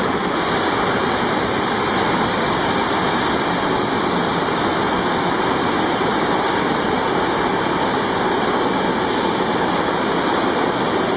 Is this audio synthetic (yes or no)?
no